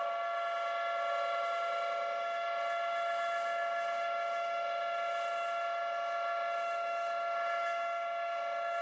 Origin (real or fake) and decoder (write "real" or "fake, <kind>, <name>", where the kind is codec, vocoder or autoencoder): fake, autoencoder, DAC-VAE